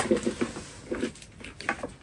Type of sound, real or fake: real